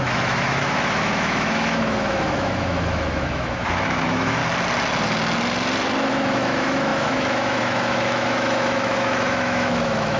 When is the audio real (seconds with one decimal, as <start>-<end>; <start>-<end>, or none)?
4.4-6.1